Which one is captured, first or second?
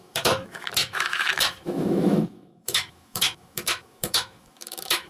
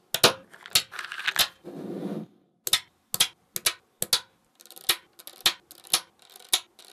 second